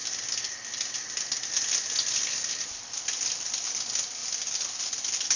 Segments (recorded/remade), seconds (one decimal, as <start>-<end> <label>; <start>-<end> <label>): 0.0-5.4 recorded